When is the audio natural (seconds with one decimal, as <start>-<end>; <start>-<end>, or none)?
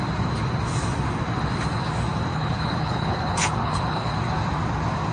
0.0-2.3; 4.1-5.1